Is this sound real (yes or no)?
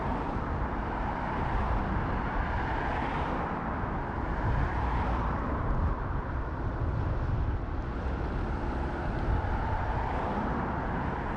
no